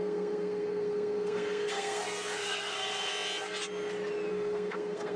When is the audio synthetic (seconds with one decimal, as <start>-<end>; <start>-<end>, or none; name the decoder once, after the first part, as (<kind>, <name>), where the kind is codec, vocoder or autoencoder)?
0.0-3.1 (codec, SNAC); 4.3-5.2